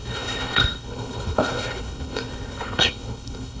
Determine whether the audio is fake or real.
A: fake